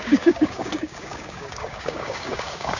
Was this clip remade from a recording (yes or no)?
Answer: yes